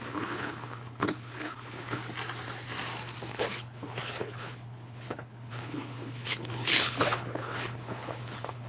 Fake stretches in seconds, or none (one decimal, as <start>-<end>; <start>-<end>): 0.0-2.0; 3.3-8.7

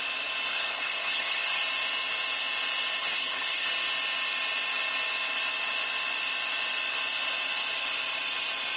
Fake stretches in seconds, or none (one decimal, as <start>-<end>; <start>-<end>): 0.5-1.6; 3.0-3.7

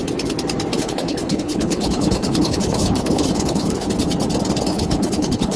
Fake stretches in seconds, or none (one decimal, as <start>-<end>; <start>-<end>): 0.7-3.9; 4.7-5.6

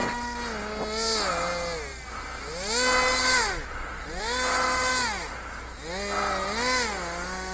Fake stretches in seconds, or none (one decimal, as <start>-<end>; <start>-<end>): none

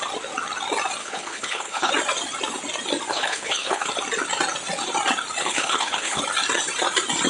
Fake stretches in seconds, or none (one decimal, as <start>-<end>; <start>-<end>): 1.0-1.9; 3.1-3.9; 5.4-6.2

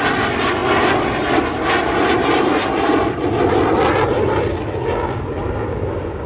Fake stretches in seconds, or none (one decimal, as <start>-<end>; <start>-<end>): none

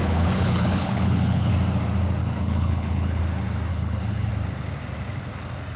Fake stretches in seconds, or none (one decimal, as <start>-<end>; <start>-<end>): 0.0-1.5; 2.2-3.2; 3.7-4.3